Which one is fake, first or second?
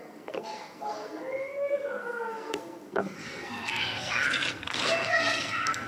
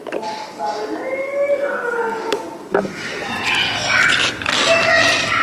first